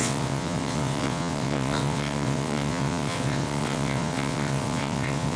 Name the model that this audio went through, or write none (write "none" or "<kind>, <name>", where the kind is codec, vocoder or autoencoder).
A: vocoder, WaveNeXt